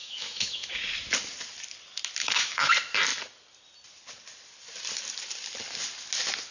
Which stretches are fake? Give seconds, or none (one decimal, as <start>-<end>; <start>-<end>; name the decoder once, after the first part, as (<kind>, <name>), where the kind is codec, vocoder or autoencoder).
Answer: 0.0-0.8 (autoencoder, DAC-VAE); 2.2-2.7